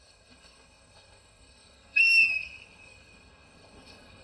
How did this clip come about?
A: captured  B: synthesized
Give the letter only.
B